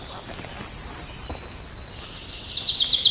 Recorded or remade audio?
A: recorded